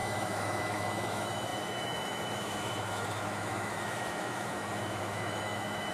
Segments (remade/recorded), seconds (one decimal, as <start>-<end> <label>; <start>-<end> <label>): 0.0-5.9 remade